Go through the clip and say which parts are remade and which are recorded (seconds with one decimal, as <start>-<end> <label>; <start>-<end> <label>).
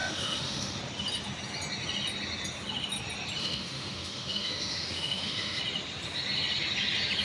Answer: 0.0-0.8 remade; 0.8-3.4 recorded; 3.4-5.6 remade; 5.6-7.2 recorded